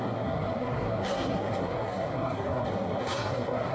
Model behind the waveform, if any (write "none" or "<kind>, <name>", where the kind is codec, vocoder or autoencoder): codec, SNAC